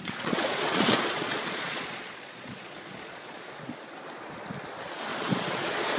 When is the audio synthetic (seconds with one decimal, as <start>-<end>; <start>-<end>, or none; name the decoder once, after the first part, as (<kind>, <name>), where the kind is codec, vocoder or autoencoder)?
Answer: 0.0-3.4 (vocoder, Vocos); 5.1-6.0